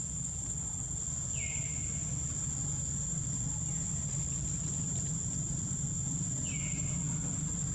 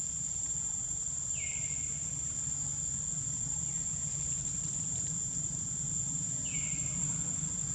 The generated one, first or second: second